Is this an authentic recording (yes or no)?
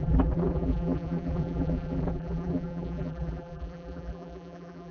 no